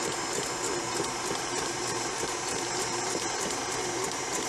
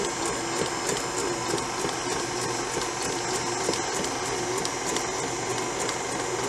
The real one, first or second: second